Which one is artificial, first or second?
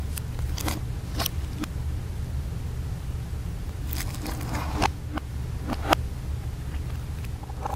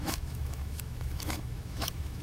second